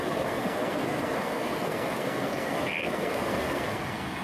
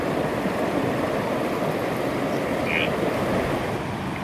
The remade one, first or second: first